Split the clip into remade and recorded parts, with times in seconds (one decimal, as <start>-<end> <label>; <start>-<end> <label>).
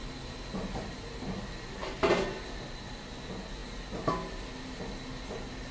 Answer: 0.0-5.7 recorded